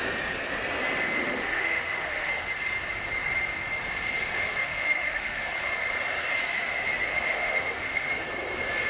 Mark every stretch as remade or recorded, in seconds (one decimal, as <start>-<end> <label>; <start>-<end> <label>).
0.0-1.2 recorded; 1.2-2.3 remade; 2.3-4.6 recorded; 4.6-5.4 remade; 5.4-7.1 recorded; 7.1-8.1 remade; 8.1-8.9 recorded